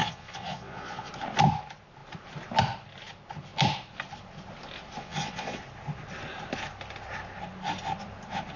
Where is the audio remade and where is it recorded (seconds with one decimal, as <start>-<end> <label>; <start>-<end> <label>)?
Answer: 0.0-1.1 remade; 1.1-5.0 recorded; 5.0-5.6 remade; 5.6-8.6 recorded